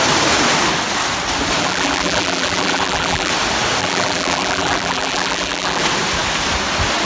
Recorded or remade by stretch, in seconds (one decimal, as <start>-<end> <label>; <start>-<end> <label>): 0.0-1.6 recorded; 1.6-3.3 remade; 3.3-3.8 recorded; 3.8-5.8 remade; 5.8-7.1 recorded